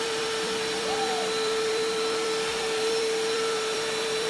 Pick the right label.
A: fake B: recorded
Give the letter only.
A